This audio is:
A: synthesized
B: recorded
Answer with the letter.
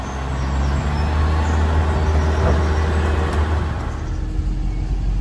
B